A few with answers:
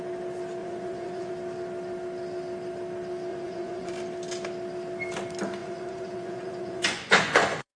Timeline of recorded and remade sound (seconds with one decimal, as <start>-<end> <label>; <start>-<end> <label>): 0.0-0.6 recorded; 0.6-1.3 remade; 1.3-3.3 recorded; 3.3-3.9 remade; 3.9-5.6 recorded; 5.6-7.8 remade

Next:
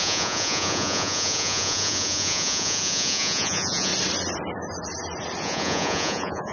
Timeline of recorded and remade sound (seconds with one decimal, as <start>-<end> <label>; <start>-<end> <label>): 0.0-3.9 remade; 3.9-5.4 recorded; 5.4-6.5 remade

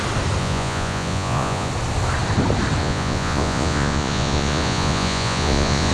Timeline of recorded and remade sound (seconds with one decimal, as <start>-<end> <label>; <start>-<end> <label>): 0.0-0.4 recorded; 0.4-1.7 remade; 1.7-2.8 recorded; 2.8-5.9 remade